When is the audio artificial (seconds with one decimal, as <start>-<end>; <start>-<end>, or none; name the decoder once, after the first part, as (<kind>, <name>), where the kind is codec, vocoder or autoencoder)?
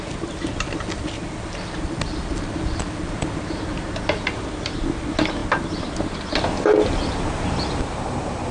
0.5-3.4 (vocoder, BigVGAN v2)